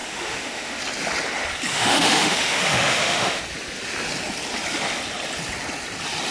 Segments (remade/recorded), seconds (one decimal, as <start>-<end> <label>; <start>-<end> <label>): 0.0-0.8 remade; 0.8-1.7 recorded; 1.7-3.4 remade; 3.4-6.3 recorded